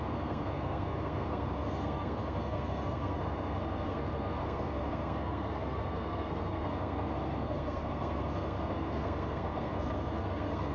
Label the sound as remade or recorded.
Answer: remade